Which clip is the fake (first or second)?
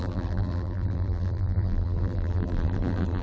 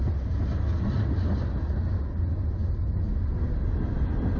first